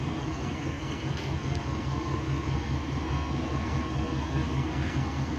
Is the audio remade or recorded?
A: remade